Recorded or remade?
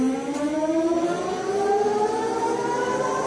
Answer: recorded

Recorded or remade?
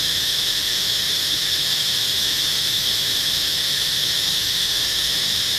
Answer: remade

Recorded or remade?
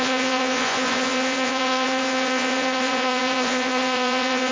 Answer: remade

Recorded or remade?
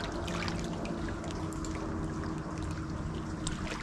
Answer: recorded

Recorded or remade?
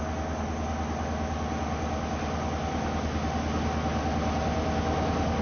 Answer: recorded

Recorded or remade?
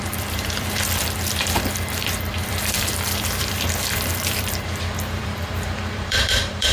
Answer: remade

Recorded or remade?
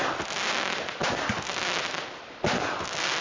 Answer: recorded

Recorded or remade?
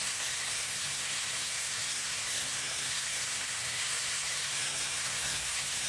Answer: remade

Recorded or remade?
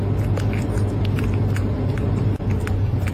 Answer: recorded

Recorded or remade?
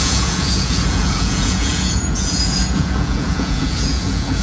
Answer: remade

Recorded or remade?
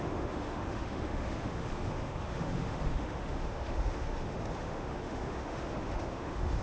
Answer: remade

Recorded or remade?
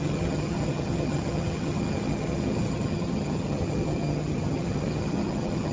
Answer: remade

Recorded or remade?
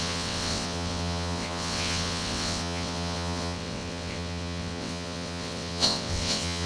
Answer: remade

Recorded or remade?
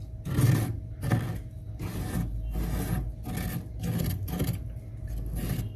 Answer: recorded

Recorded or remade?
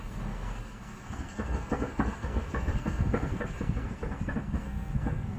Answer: remade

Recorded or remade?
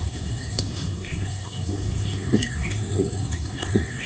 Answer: remade